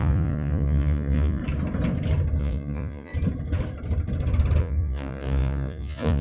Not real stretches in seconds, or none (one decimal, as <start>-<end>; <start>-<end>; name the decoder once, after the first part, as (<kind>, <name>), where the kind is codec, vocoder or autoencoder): 0.0-1.4 (vocoder, Vocos); 2.4-3.1; 4.6-6.2